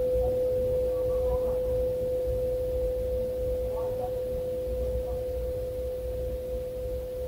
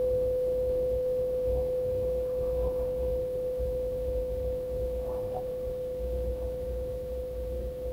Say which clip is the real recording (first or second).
first